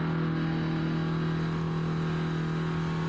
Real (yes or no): yes